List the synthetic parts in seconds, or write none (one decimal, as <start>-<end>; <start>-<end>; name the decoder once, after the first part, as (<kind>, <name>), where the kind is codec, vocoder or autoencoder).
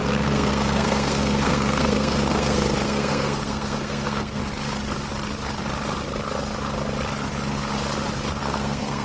0.0-4.4 (codec, SNAC); 8.4-9.0